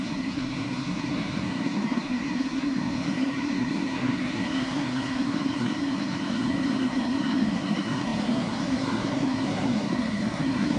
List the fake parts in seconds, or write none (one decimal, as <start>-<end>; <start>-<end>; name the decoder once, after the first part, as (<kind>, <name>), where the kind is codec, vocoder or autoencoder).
0.0-10.8 (codec, SNAC)

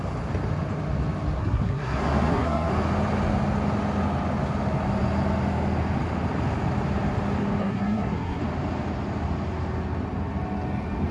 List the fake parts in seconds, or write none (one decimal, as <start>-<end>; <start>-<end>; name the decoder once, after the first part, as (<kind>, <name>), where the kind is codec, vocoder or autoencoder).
1.4-2.7 (codec, SNAC); 7.6-8.4

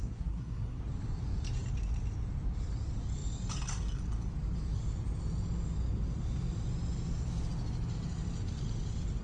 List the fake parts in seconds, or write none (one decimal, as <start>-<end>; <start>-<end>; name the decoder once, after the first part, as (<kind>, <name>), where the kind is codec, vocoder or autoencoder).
0.0-0.8 (codec, SNAC)

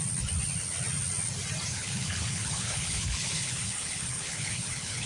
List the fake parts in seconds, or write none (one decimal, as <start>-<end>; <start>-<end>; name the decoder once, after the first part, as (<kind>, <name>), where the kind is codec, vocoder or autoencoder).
1.7-5.1 (codec, HILCodec)